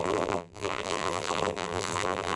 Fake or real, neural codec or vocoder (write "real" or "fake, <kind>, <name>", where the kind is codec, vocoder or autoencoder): fake, vocoder, BigVGAN v2